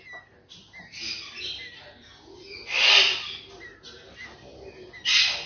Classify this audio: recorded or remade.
recorded